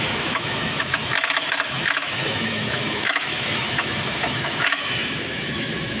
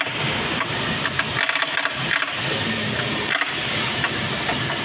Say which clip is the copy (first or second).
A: first